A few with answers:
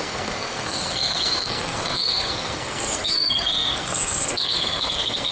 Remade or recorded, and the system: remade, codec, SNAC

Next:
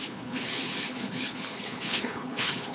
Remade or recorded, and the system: remade, codec, HILCodec